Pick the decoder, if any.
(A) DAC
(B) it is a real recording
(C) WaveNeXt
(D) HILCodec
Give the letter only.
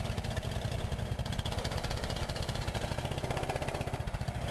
B